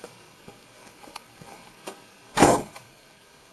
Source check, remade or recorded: remade